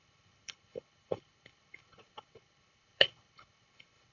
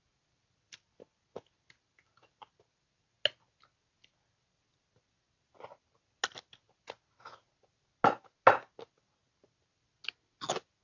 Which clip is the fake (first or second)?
first